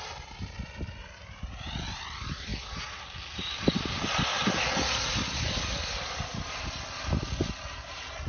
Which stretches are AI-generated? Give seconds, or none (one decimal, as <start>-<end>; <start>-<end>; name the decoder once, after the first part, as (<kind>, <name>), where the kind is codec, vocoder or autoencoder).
none